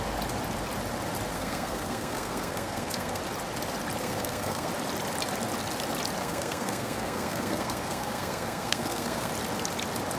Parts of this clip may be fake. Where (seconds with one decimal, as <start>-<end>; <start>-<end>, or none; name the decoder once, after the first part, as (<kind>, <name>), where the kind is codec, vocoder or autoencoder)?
1.3-3.2 (codec, SNAC); 4.0-4.7; 6.2-9.3